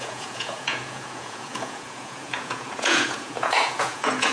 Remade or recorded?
remade